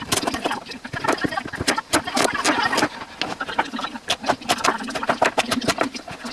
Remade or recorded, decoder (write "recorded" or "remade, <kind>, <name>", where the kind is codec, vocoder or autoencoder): recorded